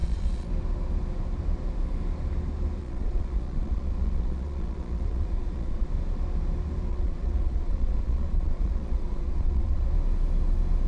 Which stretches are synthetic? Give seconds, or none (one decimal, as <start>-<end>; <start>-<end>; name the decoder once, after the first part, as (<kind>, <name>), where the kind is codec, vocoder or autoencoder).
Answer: 0.0-0.5 (vocoder, Vocos); 2.8-5.9; 6.9-9.9